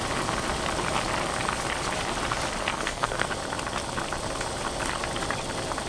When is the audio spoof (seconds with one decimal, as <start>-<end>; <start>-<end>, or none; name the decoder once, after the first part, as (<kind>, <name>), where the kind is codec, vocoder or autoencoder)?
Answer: 2.6-3.3 (codec, SNAC)